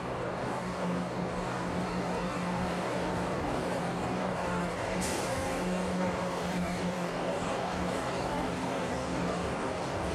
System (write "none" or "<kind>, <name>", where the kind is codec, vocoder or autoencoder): codec, DAC